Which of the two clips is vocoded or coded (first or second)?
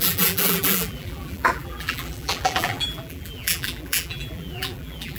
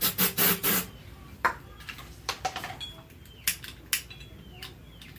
first